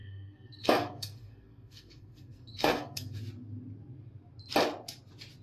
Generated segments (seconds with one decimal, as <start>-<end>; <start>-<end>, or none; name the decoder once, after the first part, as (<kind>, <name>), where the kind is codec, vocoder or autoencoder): 0.0-3.2 (codec, SNAC)